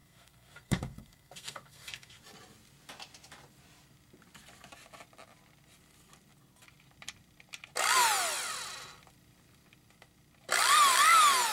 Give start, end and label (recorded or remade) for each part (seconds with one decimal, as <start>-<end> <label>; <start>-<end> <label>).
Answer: 0.0-2.2 remade; 2.2-11.5 recorded